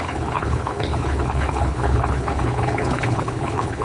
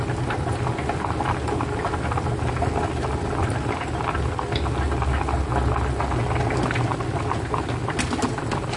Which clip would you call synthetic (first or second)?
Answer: first